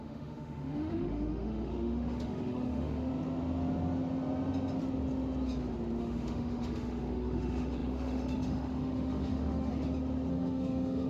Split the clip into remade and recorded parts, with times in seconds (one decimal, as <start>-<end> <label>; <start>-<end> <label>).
0.0-3.1 remade; 3.1-6.0 recorded; 6.0-9.7 remade; 9.7-10.3 recorded; 10.3-11.1 remade